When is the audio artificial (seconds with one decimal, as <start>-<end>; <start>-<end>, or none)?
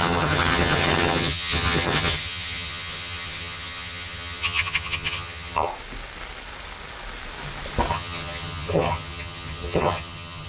0.0-5.7; 7.9-10.5